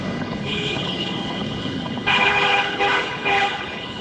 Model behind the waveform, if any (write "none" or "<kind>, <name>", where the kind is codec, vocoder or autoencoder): codec, HILCodec